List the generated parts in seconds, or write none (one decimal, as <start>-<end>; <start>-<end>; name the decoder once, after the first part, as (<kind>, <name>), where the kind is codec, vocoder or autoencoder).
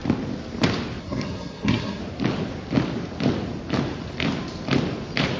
1.0-2.0 (codec, SNAC)